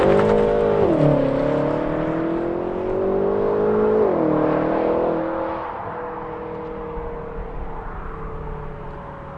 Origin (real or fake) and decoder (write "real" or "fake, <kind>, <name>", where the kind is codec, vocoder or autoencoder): real